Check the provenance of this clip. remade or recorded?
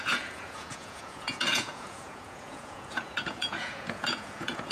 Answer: remade